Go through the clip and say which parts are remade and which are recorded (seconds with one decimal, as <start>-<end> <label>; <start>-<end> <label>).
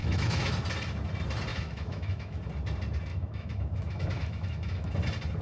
0.0-0.5 remade; 0.5-1.5 recorded; 1.5-2.4 remade; 2.4-3.1 recorded; 3.1-4.9 remade; 4.9-5.4 recorded